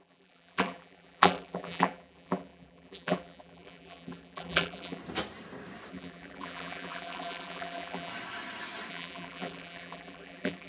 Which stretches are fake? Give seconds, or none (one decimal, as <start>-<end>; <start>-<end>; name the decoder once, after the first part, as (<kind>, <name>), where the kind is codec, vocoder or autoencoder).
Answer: 0.0-5.0 (vocoder, BigVGAN v2); 5.9-8.1; 8.9-10.7